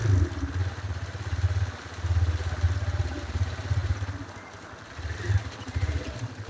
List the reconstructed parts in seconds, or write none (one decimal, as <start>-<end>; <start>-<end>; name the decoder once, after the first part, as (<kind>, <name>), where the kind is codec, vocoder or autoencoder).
none